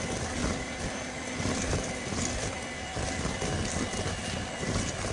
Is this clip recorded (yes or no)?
yes